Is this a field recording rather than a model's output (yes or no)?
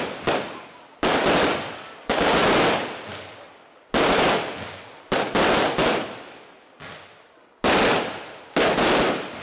yes